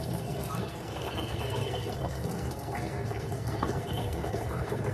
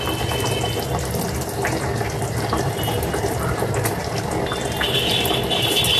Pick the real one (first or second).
second